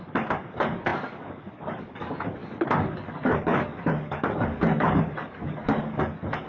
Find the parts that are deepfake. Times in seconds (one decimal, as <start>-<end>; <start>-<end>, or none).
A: 0.0-6.5